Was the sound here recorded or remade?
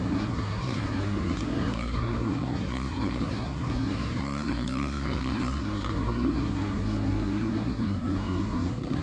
remade